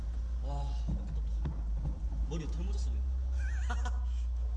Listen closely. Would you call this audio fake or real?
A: real